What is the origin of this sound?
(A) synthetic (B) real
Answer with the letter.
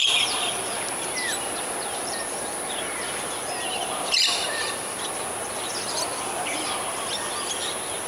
B